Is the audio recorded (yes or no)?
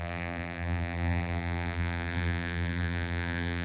no